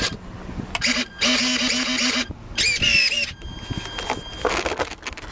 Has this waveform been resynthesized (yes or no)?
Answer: no